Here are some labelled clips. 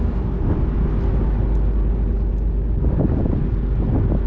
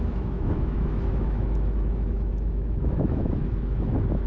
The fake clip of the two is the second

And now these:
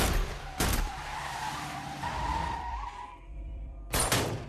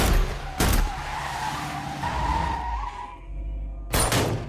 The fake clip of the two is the first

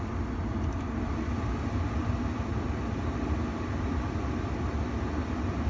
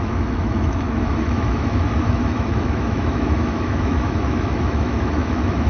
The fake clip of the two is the second